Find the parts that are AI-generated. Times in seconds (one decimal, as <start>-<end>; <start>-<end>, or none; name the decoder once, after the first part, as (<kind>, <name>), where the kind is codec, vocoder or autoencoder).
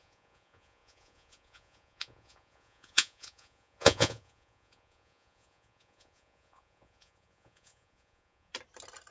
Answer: 0.0-8.5 (vocoder, Vocos)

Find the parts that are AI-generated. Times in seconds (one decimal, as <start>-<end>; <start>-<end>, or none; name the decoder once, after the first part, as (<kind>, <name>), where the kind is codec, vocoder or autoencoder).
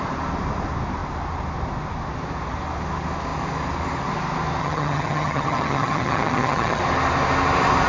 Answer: 4.6-6.8 (vocoder, HiFi-GAN)